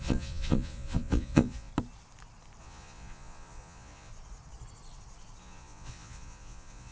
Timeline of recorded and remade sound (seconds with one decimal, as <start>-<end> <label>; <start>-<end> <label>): 0.0-1.7 remade; 1.7-2.6 recorded; 2.6-4.1 remade; 4.1-5.4 recorded; 5.4-6.9 remade